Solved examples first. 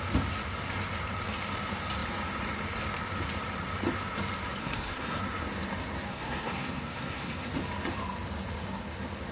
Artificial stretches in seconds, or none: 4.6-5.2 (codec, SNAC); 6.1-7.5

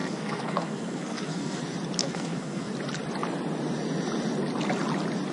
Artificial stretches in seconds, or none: 0.0-1.6 (codec, SNAC); 2.0-2.7